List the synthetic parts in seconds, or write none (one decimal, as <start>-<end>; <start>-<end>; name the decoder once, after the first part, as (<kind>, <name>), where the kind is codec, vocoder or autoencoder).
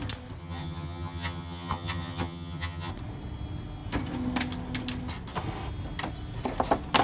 0.4-2.9 (vocoder, HiFi-GAN)